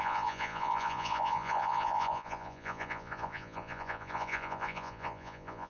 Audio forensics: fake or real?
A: fake